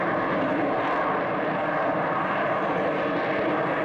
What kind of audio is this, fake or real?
real